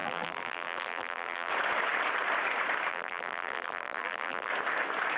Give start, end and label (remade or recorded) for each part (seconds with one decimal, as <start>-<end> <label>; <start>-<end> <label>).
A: 0.0-1.5 remade; 1.5-2.9 recorded; 2.9-4.5 remade; 4.5-5.2 recorded